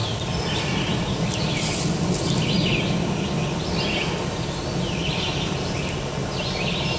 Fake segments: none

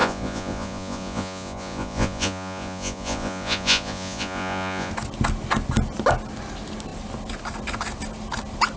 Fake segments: 0.0-4.9 (vocoder, Vocos)

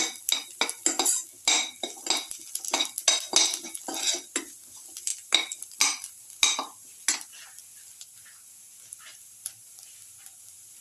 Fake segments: none

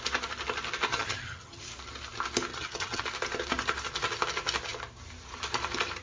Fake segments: 0.9-1.6 (vocoder, HiFi-GAN); 2.5-3.0

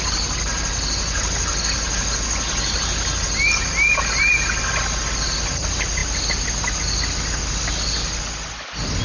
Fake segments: none

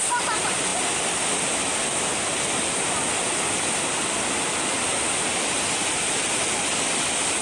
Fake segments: none

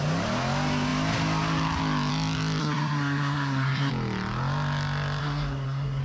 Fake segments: 2.6-3.9 (codec, SNAC); 5.2-6.0

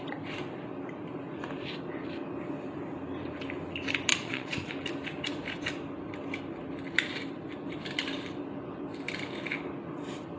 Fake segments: 4.1-4.7 (vocoder, Vocos)